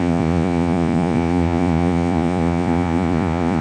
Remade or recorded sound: remade